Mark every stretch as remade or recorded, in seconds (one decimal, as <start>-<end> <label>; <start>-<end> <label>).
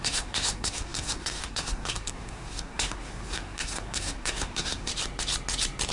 0.0-4.9 remade; 4.9-5.9 recorded